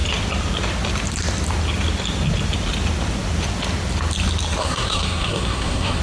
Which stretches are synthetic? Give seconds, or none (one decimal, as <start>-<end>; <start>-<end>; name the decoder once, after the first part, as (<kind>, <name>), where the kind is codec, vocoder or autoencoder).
4.6-6.0 (codec, SNAC)